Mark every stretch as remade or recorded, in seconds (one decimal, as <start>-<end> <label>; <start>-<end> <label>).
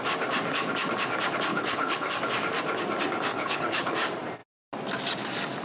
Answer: 0.0-1.5 recorded; 1.5-2.1 remade; 2.1-3.3 recorded; 3.3-3.9 remade; 3.9-5.6 recorded